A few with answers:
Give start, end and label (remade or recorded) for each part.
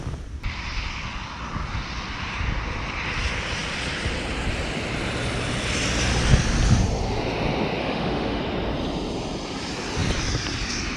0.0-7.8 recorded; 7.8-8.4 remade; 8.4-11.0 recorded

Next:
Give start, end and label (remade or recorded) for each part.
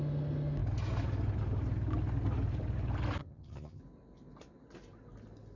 0.0-3.2 recorded; 3.2-3.8 remade; 3.8-5.6 recorded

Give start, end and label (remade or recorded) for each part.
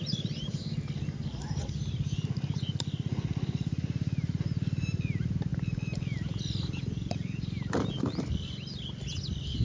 0.0-9.6 recorded